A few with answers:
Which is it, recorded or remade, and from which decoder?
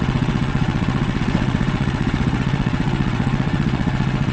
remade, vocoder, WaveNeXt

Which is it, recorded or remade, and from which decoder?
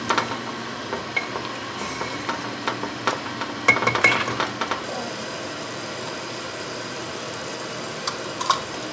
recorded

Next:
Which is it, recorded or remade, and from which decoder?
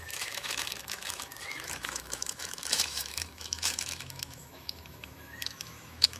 remade, autoencoder, DAC-VAE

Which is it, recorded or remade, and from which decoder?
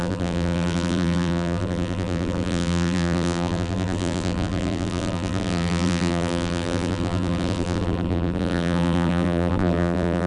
remade, vocoder, BigVGAN v2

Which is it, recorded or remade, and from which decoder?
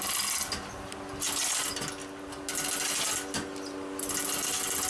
recorded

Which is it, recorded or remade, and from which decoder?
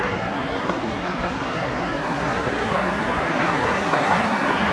remade, codec, SNAC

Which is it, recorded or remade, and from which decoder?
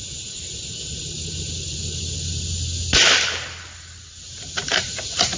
recorded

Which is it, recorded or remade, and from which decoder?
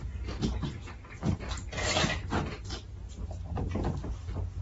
recorded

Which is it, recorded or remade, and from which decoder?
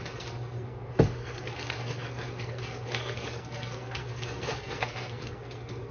remade, codec, SNAC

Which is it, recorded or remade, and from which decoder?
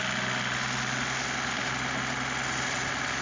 recorded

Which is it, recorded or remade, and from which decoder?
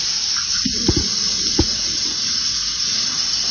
remade, vocoder, BigVGAN v2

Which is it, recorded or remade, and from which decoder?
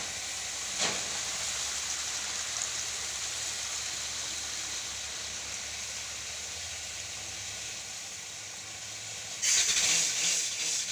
recorded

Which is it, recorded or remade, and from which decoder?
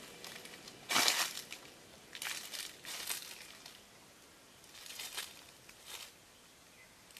recorded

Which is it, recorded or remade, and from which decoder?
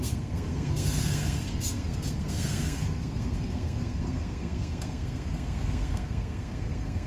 remade, codec, SNAC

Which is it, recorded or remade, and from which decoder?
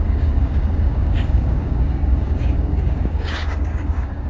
remade, codec, DAC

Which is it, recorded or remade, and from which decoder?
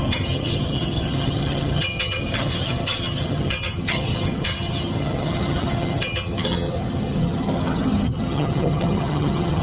remade, vocoder, HiFi-GAN